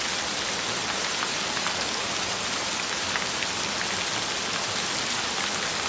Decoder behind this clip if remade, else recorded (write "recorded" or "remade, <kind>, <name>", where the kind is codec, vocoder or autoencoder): recorded